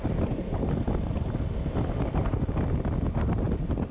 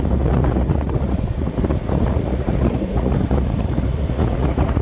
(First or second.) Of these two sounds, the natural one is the first